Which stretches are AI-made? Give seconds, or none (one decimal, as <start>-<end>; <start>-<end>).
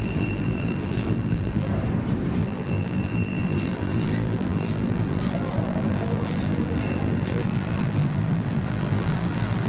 0.0-1.7; 2.4-9.7